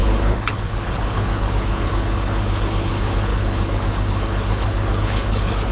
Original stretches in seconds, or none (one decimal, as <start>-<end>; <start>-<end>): none

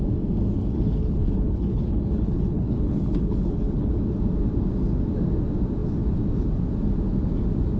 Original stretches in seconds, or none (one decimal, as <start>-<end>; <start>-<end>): 0.0-0.6; 3.9-7.8

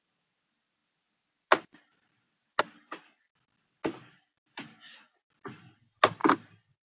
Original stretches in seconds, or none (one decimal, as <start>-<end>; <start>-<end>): 0.0-6.8

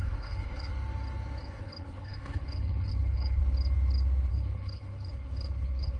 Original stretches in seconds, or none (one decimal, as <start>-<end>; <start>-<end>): 0.7-1.4; 3.4-4.3

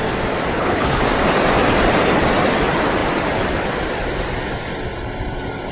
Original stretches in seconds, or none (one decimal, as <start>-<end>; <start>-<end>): 0.0-0.5; 1.0-5.7

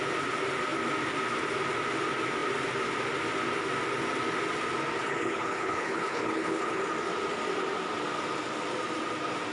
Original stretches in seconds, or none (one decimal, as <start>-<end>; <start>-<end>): 0.0-5.0; 6.8-9.5

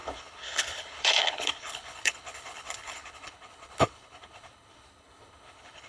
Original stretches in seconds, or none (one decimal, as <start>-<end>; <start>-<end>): none